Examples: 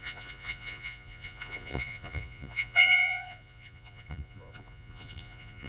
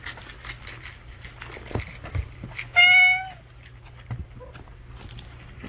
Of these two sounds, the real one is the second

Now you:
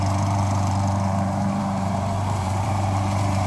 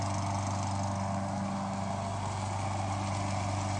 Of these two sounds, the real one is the second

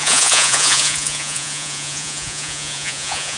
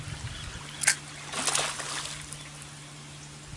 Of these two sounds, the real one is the second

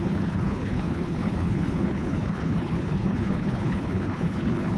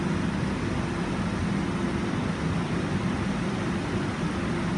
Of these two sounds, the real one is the second